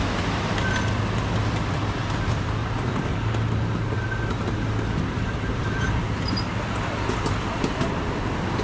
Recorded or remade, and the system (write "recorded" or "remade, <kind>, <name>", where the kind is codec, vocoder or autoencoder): recorded